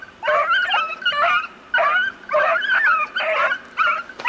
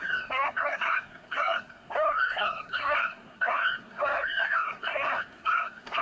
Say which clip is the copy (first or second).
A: second